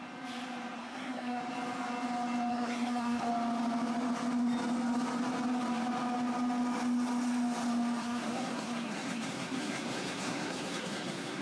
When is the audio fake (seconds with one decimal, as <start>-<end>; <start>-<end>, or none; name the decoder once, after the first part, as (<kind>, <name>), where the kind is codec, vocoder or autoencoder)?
0.8-1.4 (codec, SNAC); 2.5-3.3; 8.0-11.4